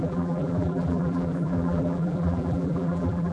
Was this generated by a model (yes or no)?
yes